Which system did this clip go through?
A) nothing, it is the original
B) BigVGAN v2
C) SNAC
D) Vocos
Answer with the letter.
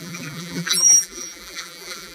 B